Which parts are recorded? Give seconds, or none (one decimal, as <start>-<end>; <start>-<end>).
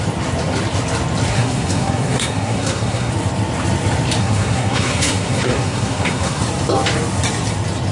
0.0-1.3; 3.1-4.2; 6.4-7.9